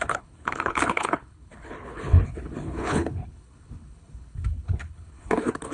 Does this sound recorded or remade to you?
remade